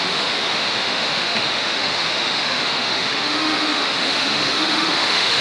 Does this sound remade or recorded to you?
remade